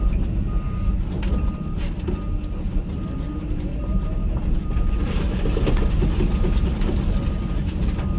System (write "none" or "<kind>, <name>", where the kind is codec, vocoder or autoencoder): none